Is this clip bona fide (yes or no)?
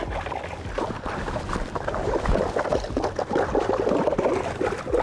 yes